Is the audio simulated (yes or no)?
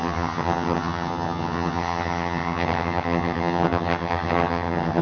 yes